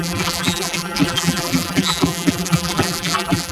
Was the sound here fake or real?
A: fake